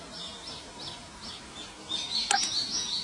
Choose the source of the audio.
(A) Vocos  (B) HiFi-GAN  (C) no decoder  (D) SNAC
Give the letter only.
C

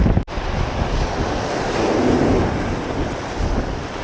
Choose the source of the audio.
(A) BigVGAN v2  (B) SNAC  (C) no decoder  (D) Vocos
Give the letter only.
C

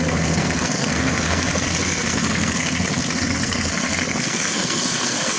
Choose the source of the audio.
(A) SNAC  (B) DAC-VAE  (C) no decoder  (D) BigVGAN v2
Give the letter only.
A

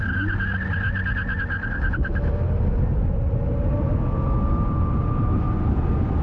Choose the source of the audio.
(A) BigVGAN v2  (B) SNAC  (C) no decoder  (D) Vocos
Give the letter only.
C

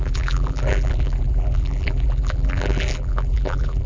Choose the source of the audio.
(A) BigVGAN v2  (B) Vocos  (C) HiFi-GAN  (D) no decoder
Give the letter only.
A